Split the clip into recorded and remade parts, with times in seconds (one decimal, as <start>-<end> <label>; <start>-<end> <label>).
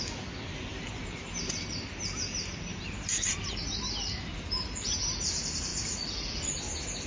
0.0-0.7 recorded; 0.7-1.2 remade; 1.2-2.7 recorded; 2.7-5.0 remade; 5.0-7.1 recorded